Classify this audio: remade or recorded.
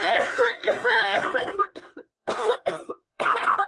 remade